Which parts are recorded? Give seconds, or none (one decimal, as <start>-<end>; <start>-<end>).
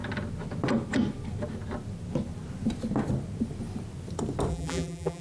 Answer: 0.0-4.5